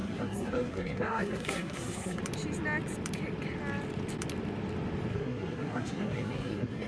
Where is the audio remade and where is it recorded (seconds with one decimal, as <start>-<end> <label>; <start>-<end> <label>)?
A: 0.0-2.2 remade; 2.2-5.1 recorded; 5.1-6.9 remade